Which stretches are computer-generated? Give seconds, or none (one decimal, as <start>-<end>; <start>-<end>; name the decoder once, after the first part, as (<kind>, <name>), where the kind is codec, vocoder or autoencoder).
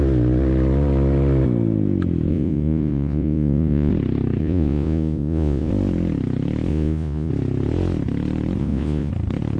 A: 2.3-3.9 (vocoder, Vocos); 4.4-5.7; 6.7-7.3; 8.6-9.1